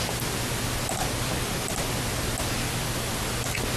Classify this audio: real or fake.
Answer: real